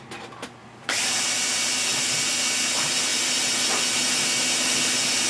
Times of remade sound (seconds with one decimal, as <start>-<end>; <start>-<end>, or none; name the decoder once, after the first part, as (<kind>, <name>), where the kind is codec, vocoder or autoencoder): 0.6-1.1 (vocoder, BigVGAN v2)

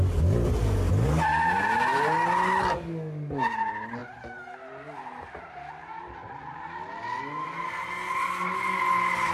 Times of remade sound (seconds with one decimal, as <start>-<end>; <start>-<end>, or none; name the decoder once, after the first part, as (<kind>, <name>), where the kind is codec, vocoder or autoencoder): none